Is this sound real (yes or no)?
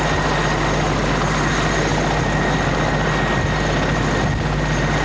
yes